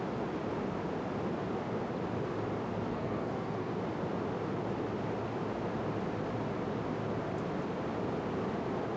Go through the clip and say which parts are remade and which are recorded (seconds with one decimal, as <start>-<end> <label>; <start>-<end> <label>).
0.0-2.9 recorded; 2.9-3.8 remade; 3.8-9.0 recorded